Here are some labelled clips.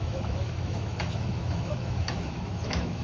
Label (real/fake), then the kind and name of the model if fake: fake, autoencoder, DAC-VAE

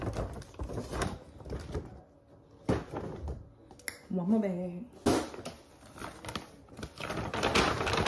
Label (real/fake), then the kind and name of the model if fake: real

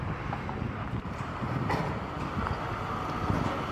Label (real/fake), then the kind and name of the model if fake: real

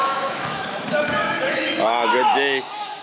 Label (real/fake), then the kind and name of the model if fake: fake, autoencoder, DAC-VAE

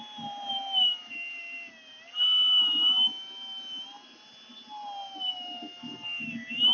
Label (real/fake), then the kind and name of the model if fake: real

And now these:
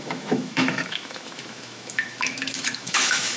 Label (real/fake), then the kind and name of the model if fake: fake, autoencoder, DAC-VAE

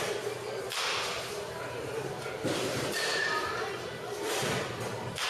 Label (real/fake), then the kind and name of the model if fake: real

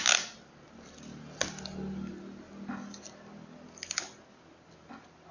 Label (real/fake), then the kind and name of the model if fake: real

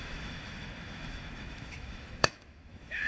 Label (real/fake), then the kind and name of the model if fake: fake, autoencoder, DAC-VAE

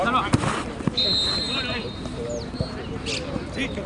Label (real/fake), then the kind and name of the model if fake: real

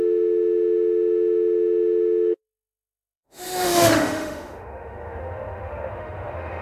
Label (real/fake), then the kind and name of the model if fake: fake, autoencoder, DAC-VAE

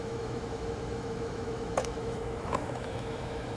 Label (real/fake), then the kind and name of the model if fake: fake, autoencoder, DAC-VAE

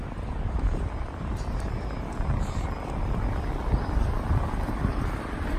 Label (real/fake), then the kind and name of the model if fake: real